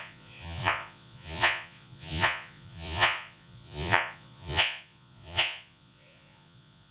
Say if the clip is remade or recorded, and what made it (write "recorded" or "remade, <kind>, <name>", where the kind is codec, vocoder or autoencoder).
remade, vocoder, Vocos